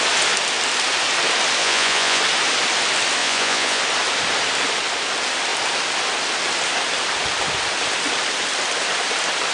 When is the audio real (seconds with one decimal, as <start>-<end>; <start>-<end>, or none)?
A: 0.0-1.6; 2.2-3.2; 3.8-9.5

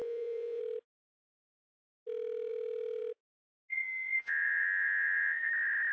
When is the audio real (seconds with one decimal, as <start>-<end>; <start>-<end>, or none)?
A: 0.6-3.7; 5.5-5.9

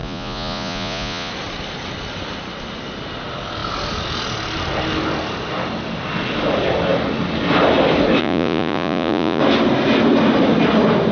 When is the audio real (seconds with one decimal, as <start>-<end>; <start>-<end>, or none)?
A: 1.3-8.2; 9.4-11.1

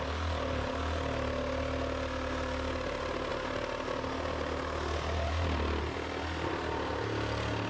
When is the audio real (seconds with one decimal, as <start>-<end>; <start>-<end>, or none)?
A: 0.0-7.7

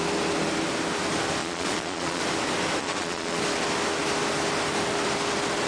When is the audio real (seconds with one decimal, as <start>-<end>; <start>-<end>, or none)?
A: 0.0-1.4; 2.2-2.8; 3.4-5.7

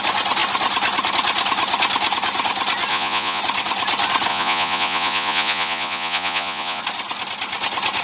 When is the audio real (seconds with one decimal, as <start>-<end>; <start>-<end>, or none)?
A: 0.0-2.9; 3.4-4.3; 6.8-8.0